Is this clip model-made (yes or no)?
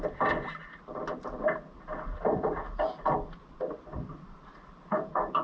no